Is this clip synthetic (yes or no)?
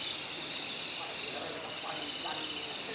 no